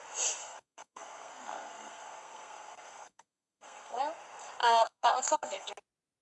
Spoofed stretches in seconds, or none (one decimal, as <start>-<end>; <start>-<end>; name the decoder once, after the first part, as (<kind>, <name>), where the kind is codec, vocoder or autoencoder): 0.4-4.0 (codec, SNAC); 4.6-5.7